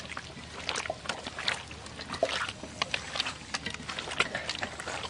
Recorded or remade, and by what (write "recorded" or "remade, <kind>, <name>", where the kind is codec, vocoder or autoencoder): recorded